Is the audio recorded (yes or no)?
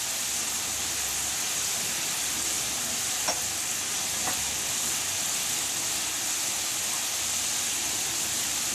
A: yes